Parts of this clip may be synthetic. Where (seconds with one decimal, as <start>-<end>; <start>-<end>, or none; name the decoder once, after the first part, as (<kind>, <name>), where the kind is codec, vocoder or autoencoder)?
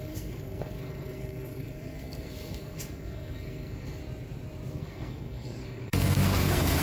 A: 0.0-4.0 (codec, SNAC); 4.7-6.8